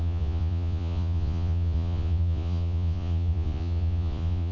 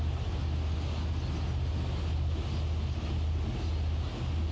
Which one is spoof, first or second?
first